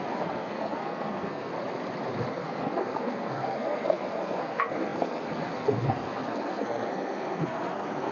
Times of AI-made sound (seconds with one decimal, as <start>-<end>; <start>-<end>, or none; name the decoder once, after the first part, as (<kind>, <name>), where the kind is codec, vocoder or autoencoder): 0.0-1.5 (codec, SNAC); 2.3-8.1